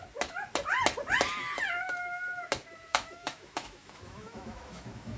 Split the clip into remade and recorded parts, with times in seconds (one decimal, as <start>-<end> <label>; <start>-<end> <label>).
0.0-2.9 recorded; 2.9-5.2 remade